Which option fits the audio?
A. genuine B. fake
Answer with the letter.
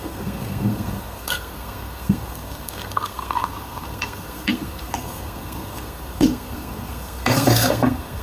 B